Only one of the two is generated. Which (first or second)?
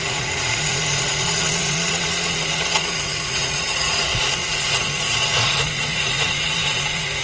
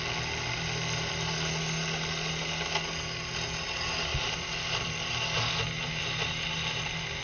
first